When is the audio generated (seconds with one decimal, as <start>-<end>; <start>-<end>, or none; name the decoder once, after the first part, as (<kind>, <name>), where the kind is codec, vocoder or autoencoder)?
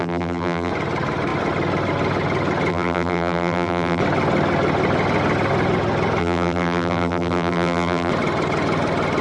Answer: 0.0-0.7 (vocoder, BigVGAN v2); 2.7-4.0; 6.2-8.1